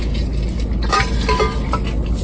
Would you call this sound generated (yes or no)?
no